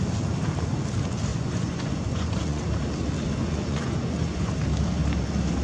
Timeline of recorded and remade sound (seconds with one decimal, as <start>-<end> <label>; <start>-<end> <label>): 0.0-1.3 recorded; 1.3-2.6 remade; 2.6-3.4 recorded; 3.4-4.5 remade; 4.5-5.6 recorded